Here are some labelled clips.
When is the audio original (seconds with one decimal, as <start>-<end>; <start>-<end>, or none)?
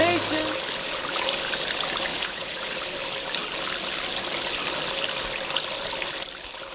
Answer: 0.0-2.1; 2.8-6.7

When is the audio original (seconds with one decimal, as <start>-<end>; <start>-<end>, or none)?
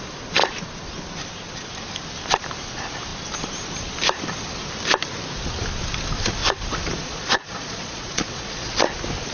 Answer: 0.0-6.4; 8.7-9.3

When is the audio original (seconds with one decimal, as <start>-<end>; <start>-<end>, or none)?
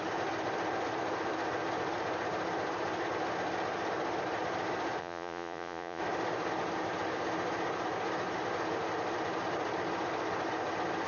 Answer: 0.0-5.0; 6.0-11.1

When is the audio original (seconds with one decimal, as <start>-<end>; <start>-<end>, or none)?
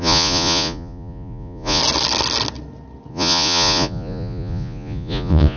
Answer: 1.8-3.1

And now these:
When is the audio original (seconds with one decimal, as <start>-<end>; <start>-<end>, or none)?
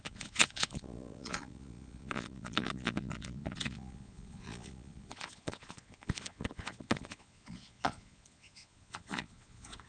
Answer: none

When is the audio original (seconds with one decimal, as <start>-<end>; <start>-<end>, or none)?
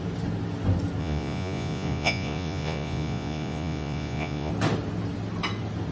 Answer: 0.0-1.0; 4.5-5.9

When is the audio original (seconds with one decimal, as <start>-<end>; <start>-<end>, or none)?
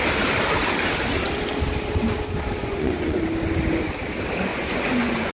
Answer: 0.0-2.6; 3.2-4.5